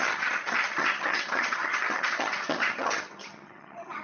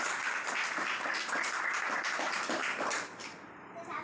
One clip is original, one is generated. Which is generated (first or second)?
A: first